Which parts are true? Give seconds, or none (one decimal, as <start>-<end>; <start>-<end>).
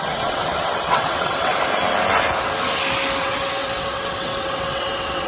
1.5-3.2